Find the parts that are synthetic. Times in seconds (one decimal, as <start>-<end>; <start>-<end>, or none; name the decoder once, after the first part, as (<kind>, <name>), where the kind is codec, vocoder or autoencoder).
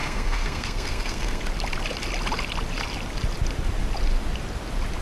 0.0-1.4 (codec, SNAC)